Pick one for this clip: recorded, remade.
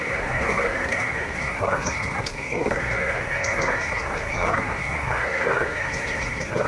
remade